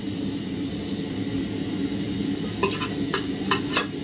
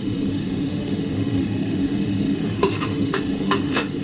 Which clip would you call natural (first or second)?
first